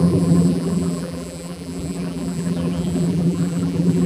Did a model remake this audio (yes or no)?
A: yes